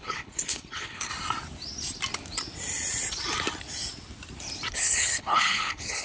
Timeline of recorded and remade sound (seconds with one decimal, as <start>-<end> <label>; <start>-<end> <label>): 0.0-1.1 remade; 1.1-4.7 recorded; 4.7-6.0 remade